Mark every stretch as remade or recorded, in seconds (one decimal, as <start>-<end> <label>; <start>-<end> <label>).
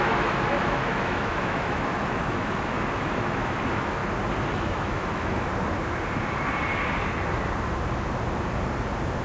0.0-4.0 remade; 4.0-4.5 recorded; 4.5-5.5 remade; 5.5-9.2 recorded